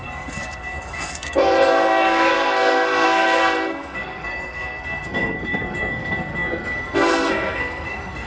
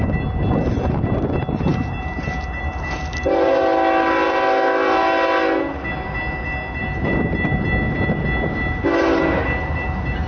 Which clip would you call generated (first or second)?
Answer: first